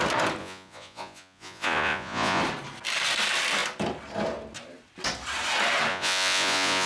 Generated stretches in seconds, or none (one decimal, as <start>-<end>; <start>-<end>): 0.4-2.4; 5.9-6.9